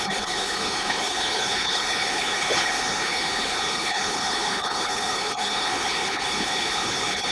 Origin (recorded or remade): remade